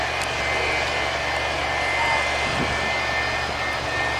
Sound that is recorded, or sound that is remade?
recorded